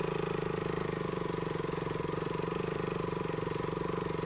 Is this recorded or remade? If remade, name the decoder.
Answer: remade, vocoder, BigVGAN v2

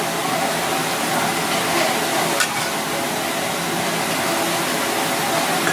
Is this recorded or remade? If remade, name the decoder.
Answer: recorded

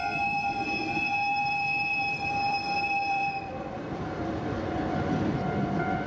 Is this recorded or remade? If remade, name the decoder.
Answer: remade, vocoder, BigVGAN v2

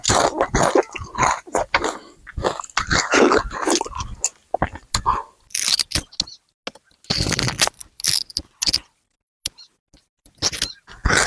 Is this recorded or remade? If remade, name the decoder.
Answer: recorded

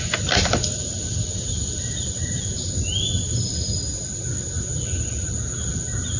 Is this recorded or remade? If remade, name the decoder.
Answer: recorded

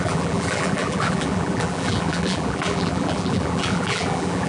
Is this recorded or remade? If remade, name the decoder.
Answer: remade, vocoder, BigVGAN v2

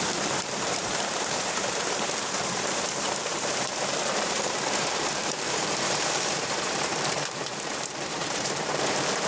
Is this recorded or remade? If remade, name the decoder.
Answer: remade, vocoder, BigVGAN v2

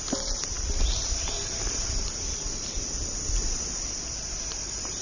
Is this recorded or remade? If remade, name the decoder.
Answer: remade, vocoder, BigVGAN v2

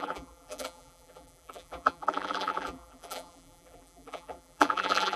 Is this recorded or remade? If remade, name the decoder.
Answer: remade, vocoder, BigVGAN v2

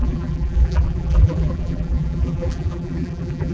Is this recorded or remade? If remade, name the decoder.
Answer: remade, vocoder, BigVGAN v2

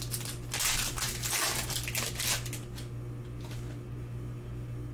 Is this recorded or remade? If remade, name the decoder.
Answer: recorded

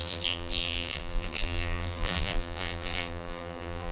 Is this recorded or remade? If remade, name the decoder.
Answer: remade, vocoder, BigVGAN v2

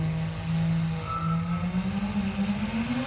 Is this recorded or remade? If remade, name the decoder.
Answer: recorded